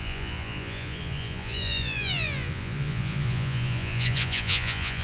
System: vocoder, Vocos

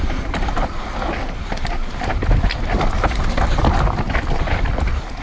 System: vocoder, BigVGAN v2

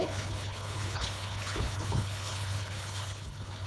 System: codec, HILCodec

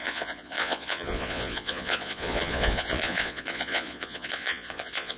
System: vocoder, Vocos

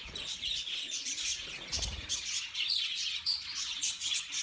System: vocoder, Vocos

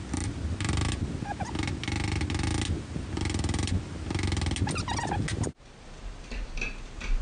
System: none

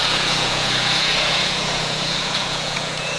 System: vocoder, Vocos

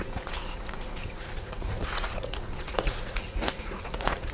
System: vocoder, Vocos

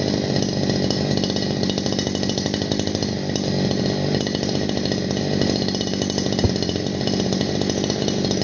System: none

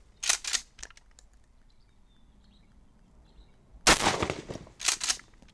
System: none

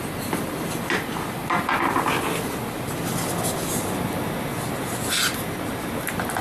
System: none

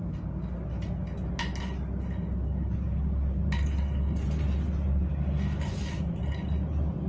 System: none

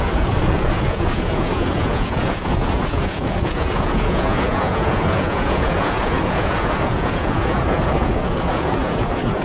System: vocoder, Vocos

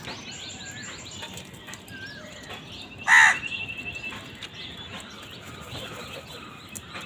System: none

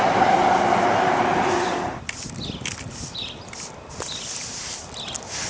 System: none